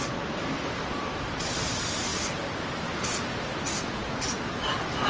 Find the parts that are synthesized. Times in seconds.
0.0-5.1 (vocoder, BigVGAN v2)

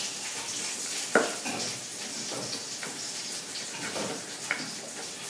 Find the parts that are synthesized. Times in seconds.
none

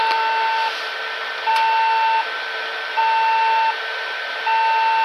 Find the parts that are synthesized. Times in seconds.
none

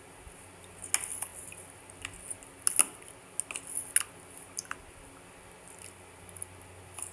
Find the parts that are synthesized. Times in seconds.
none

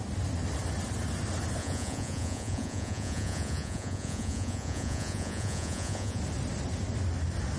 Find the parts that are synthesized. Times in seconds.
1.6-6.2 (vocoder, Vocos)

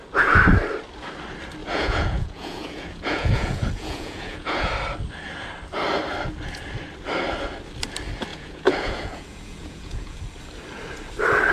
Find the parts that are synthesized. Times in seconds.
1.6-4.7 (vocoder, Vocos); 8.3-10.2

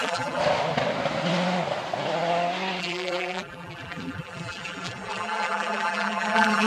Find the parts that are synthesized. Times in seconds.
0.0-0.4 (vocoder, BigVGAN v2); 2.8-6.7

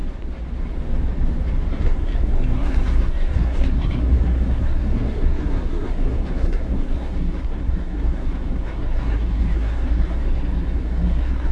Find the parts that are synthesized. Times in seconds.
1.7-11.5 (codec, SNAC)